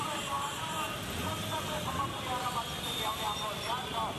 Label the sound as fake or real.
fake